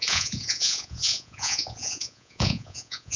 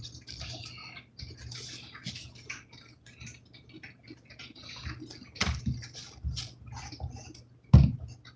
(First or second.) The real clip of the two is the second